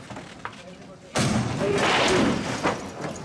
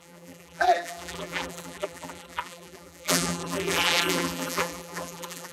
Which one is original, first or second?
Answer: first